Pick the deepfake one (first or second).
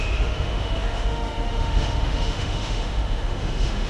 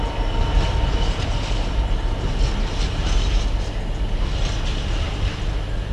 first